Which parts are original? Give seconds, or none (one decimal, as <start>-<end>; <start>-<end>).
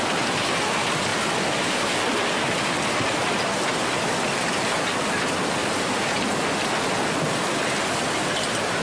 0.0-8.8